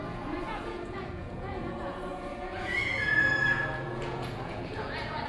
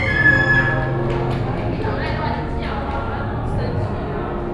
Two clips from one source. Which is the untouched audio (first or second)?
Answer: second